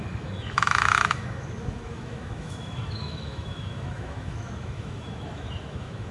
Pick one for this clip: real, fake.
fake